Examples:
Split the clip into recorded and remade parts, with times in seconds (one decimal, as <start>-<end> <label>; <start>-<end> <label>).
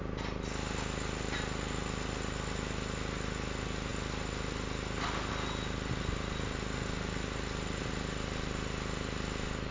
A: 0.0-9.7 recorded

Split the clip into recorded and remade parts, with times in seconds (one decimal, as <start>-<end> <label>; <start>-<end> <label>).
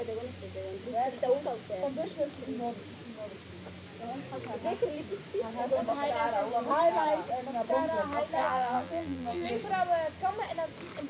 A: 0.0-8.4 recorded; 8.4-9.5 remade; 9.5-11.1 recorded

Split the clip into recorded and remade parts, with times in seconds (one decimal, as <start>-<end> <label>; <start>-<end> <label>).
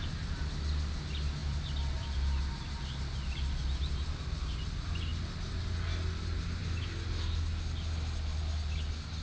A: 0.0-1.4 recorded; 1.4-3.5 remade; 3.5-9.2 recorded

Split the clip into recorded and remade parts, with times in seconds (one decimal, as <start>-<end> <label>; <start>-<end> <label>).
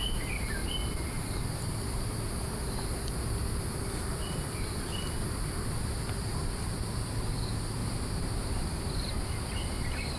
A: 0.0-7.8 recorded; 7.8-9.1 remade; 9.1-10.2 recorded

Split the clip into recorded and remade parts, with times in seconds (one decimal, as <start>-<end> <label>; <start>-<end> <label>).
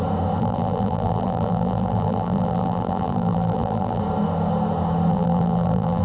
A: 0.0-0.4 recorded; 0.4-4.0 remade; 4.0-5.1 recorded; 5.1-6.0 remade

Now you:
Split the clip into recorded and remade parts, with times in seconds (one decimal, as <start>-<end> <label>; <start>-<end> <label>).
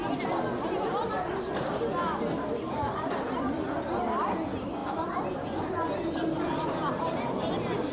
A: 0.0-4.8 recorded; 4.8-7.5 remade; 7.5-7.9 recorded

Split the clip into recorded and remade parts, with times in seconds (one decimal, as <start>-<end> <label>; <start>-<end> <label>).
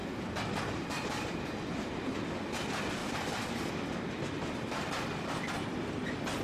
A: 0.0-6.4 recorded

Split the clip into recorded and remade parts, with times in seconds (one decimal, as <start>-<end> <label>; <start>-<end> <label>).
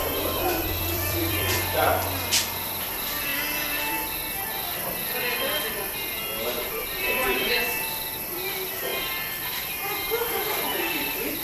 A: 0.0-1.9 remade; 1.9-2.7 recorded; 2.7-3.3 remade; 3.3-6.7 recorded; 6.7-8.9 remade; 8.9-9.5 recorded; 9.5-11.4 remade